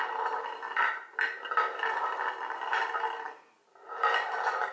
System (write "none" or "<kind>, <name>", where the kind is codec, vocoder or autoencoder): none